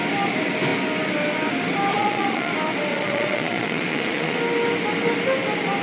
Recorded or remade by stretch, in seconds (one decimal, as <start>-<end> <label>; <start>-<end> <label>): 0.0-1.9 recorded; 1.9-2.5 remade; 2.5-2.9 recorded; 2.9-4.4 remade; 4.4-5.8 recorded